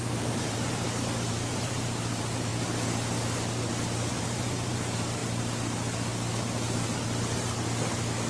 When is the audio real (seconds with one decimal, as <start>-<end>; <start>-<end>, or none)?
2.5-4.1; 5.2-8.3